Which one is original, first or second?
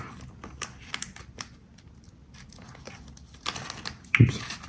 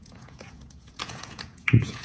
first